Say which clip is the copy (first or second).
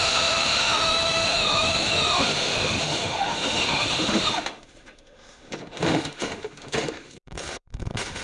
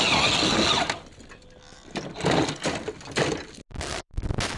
first